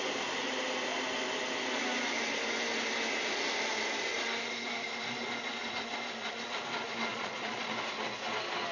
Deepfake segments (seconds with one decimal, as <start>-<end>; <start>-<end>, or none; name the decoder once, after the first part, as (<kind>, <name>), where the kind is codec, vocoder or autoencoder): 7.1-7.7 (vocoder, Vocos)